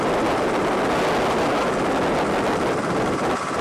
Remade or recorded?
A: recorded